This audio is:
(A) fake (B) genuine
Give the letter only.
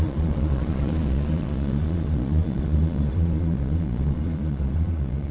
A